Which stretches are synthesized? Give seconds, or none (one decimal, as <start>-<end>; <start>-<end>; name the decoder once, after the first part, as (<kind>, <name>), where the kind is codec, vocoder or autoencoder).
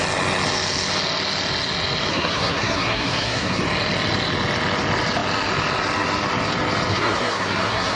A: 2.1-3.6 (codec, SNAC); 6.9-8.0